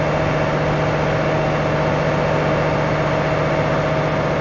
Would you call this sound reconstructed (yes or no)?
no